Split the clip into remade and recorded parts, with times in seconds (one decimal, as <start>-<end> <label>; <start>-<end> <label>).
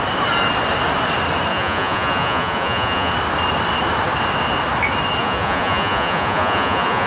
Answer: 0.0-1.5 recorded; 1.5-3.1 remade; 3.1-5.2 recorded; 5.2-7.1 remade